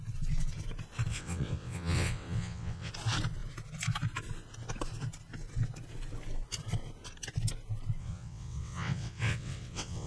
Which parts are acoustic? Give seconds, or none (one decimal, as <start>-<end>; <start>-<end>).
0.0-1.1; 2.9-8.0

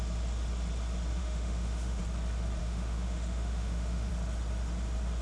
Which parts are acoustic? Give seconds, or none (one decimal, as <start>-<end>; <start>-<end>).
0.0-1.2; 2.0-2.6; 4.1-5.2